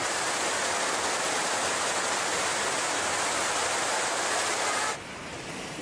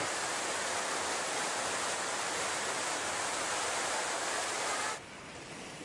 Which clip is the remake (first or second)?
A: second